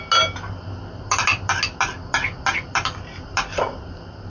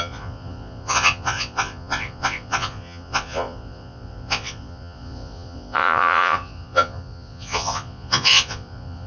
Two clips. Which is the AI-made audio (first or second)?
second